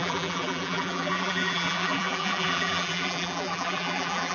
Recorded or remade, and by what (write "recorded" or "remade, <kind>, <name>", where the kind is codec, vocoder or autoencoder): remade, vocoder, BigVGAN v2